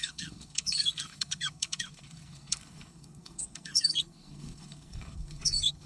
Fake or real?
fake